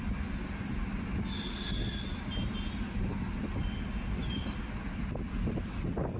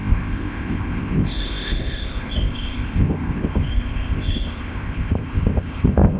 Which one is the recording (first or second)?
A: first